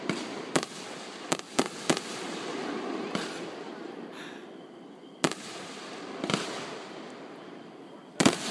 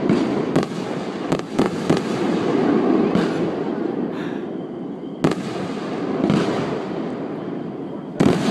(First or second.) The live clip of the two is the second